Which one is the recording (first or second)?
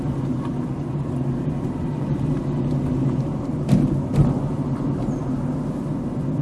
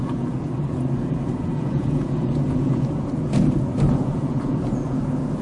first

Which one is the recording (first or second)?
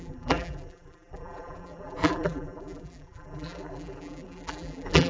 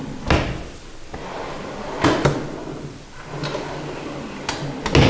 second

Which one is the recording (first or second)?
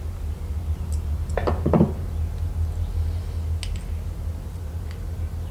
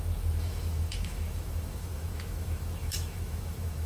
first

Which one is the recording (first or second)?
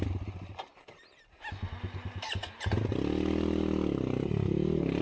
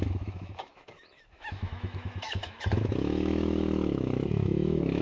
first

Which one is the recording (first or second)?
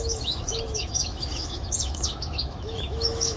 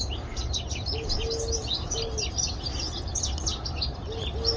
second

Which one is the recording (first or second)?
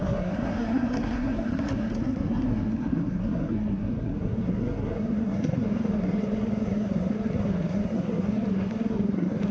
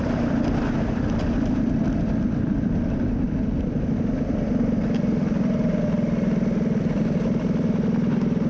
second